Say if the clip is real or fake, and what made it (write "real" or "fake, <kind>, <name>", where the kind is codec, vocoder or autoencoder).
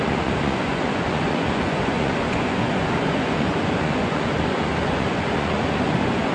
fake, vocoder, Vocos